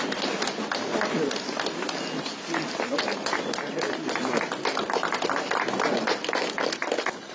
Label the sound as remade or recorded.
recorded